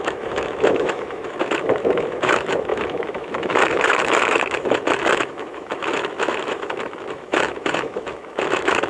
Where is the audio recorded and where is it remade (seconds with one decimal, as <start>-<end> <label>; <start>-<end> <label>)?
0.0-8.9 remade